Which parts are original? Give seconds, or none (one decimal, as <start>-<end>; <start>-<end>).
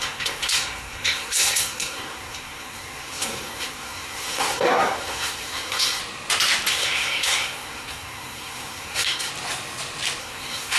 6.0-6.7; 9.3-10.2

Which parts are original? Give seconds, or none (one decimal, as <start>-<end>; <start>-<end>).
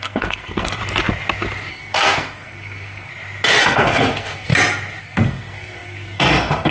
0.8-1.7; 3.1-3.6; 4.5-5.0